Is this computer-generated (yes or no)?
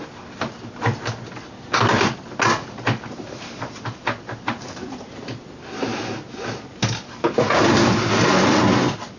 no